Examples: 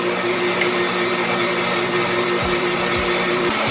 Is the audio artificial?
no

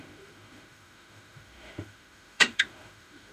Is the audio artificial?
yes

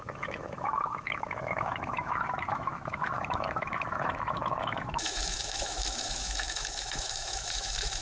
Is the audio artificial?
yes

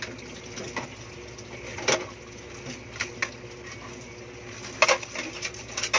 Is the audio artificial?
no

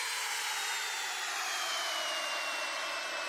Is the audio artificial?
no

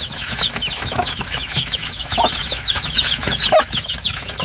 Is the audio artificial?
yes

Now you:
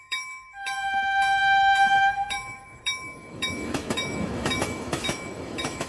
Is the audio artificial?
yes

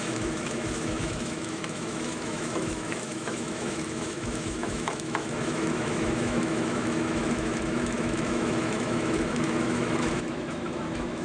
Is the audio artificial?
yes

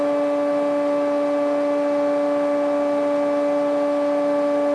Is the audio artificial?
no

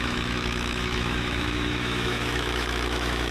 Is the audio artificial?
yes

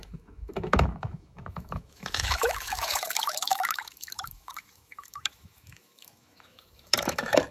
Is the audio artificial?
yes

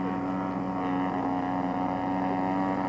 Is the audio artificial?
no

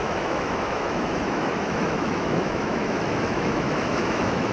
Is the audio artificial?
yes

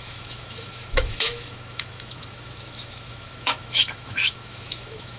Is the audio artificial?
yes